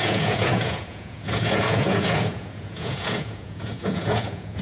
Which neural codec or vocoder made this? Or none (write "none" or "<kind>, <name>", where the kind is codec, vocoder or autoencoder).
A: vocoder, Vocos